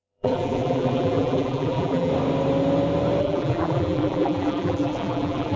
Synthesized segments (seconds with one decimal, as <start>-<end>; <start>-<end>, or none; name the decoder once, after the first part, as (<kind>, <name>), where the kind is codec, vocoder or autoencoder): 0.0-2.1 (vocoder, BigVGAN v2); 3.2-5.6